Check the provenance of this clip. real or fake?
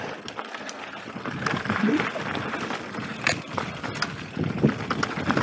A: real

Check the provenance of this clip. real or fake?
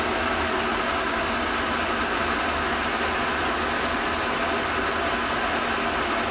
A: real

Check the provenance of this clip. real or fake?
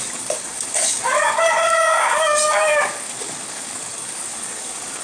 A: fake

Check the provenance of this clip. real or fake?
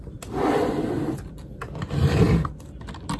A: real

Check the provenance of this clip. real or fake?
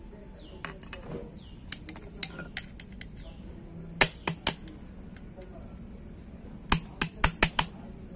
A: real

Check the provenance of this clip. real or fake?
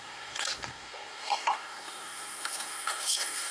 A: fake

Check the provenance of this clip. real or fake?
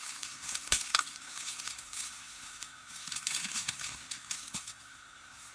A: fake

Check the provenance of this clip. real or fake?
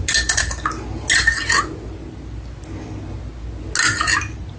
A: real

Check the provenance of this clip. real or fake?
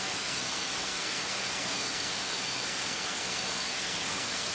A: fake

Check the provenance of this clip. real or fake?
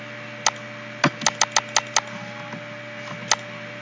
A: real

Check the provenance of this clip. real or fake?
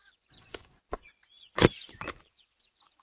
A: fake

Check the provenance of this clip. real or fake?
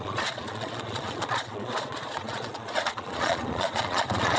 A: fake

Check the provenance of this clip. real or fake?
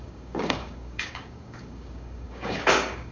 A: fake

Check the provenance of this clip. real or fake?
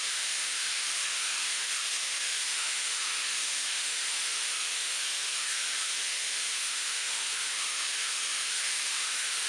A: fake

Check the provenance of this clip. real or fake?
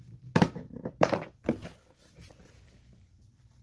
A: real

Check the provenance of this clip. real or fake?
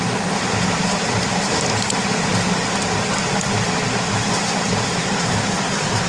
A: real